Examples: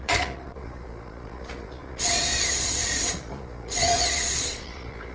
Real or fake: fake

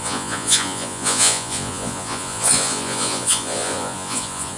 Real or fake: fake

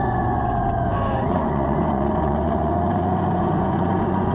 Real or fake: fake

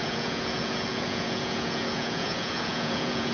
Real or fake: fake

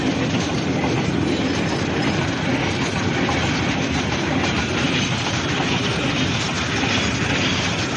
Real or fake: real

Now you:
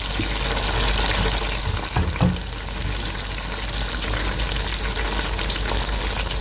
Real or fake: real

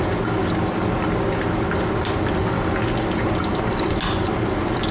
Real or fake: real